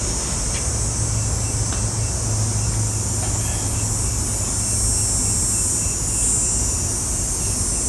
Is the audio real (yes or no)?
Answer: yes